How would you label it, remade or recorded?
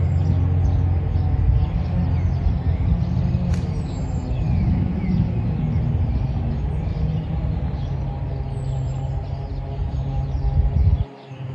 recorded